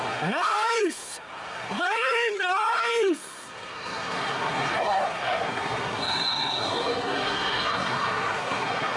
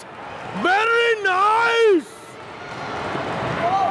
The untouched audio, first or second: second